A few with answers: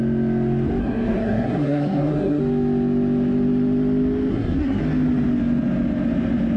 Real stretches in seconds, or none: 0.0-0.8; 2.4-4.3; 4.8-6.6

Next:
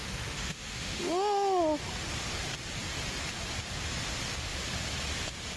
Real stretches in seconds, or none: 1.6-5.6

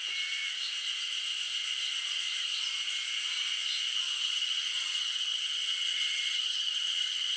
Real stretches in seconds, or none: 0.0-4.2